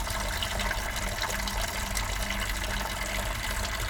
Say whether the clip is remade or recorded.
recorded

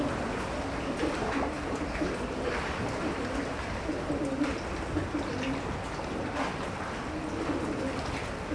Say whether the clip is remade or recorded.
recorded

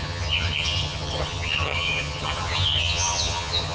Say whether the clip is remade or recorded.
remade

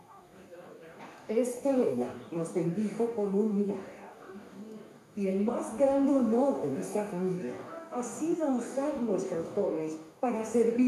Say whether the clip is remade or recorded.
remade